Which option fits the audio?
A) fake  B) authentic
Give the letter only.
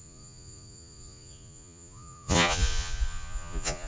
A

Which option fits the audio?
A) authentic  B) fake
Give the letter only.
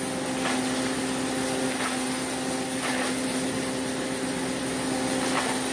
A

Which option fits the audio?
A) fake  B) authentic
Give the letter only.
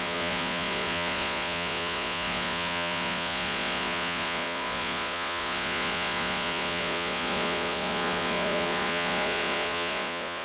A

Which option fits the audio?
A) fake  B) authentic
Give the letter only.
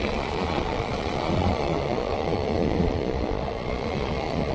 A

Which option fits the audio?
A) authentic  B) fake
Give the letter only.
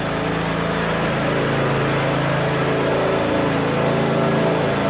A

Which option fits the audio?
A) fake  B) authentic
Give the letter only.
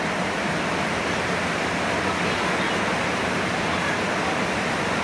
B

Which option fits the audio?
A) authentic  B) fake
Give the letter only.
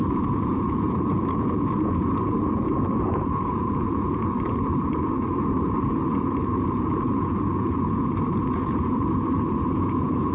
B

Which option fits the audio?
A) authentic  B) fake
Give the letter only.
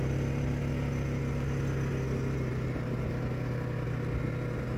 A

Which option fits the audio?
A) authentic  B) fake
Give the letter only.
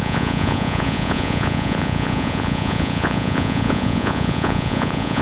B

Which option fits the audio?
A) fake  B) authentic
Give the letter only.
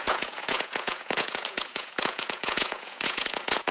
A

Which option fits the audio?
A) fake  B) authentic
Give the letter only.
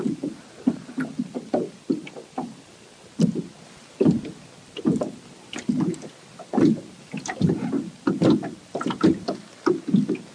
B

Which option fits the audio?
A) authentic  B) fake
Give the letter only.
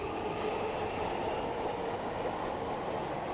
A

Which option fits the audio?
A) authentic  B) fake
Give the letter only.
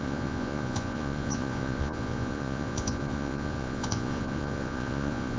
B